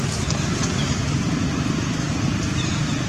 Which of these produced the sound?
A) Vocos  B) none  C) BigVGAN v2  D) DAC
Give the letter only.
B